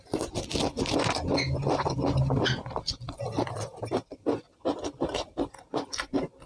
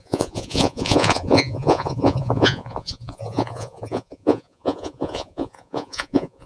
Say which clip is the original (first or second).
first